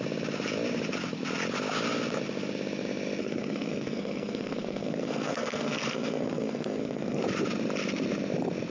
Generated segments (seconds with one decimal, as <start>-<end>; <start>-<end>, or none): 3.2-7.2